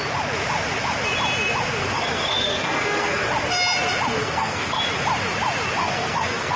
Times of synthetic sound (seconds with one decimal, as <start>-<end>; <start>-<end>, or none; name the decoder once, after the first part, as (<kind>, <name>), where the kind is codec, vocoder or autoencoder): 1.8-3.3 (codec, SNAC); 4.2-4.8; 5.8-6.6

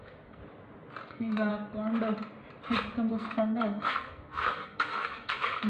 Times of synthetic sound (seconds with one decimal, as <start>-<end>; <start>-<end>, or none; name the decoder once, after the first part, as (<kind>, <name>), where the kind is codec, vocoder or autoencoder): 0.0-0.4 (codec, SNAC); 1.1-1.5; 3.1-5.7

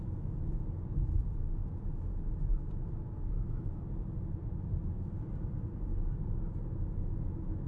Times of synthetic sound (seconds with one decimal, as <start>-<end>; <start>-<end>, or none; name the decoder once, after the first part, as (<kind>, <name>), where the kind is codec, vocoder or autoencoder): none

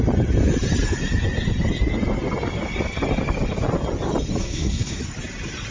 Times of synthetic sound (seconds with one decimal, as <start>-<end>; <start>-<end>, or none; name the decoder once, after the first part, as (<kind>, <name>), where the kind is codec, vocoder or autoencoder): 4.4-5.0 (codec, SNAC)

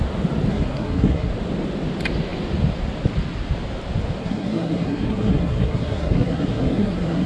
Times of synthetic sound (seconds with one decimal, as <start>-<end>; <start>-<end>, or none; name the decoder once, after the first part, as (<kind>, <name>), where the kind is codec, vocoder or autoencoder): 0.5-1.3 (codec, SNAC); 4.2-7.3

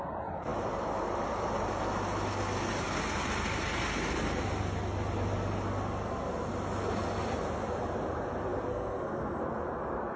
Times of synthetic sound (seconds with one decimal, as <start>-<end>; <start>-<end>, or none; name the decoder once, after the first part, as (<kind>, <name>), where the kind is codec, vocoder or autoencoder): 8.7-9.4 (codec, SNAC)